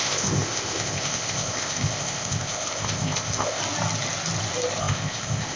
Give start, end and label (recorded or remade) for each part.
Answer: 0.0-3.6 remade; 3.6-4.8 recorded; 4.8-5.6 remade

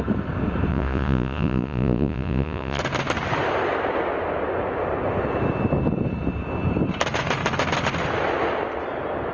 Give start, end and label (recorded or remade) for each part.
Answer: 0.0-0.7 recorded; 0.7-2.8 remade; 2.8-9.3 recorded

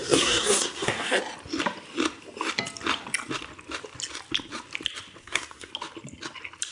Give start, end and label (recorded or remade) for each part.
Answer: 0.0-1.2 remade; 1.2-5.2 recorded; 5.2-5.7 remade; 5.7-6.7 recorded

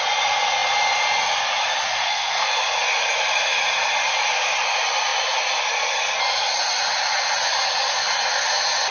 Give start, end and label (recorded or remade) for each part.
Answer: 0.0-2.0 recorded; 2.0-2.5 remade; 2.5-8.9 recorded

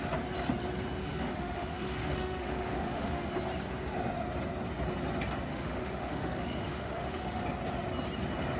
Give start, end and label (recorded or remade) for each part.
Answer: 0.0-1.0 recorded; 1.0-3.3 remade; 3.3-5.5 recorded; 5.5-7.4 remade; 7.4-8.6 recorded

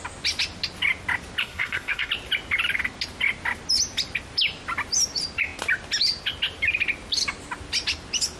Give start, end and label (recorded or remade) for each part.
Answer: 0.0-1.4 recorded; 1.4-2.1 remade; 2.1-8.4 recorded

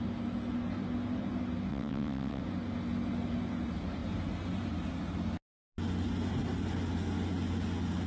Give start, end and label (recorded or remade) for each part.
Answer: 0.0-1.7 recorded; 1.7-2.4 remade; 2.4-8.1 recorded